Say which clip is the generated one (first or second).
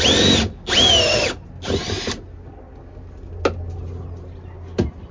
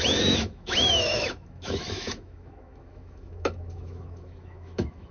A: second